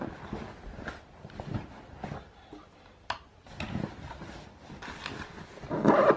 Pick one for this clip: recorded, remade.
recorded